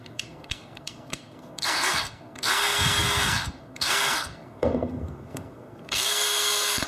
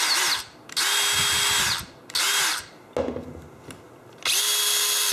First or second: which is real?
second